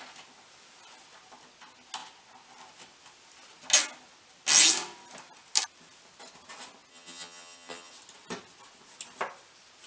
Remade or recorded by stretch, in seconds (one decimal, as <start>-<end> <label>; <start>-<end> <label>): 0.0-6.9 recorded; 6.9-7.9 remade; 7.9-9.9 recorded

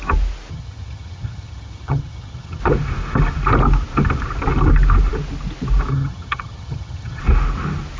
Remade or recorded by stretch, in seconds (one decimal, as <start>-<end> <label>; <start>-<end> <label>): 0.0-0.5 recorded; 0.5-2.6 remade; 2.6-5.9 recorded; 5.9-7.2 remade; 7.2-8.0 recorded